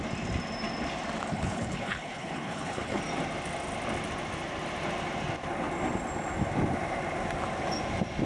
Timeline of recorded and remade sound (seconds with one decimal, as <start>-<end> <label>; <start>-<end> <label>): 0.0-1.3 recorded; 1.3-3.0 remade; 3.0-8.3 recorded